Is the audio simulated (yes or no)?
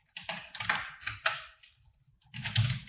no